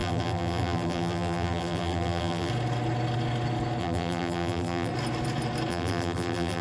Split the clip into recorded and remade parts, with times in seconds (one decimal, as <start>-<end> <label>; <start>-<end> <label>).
0.0-2.5 remade; 2.5-3.8 recorded; 3.8-4.9 remade; 4.9-5.7 recorded; 5.7-6.6 remade